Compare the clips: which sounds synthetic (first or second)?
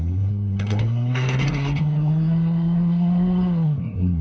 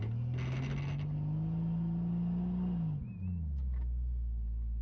first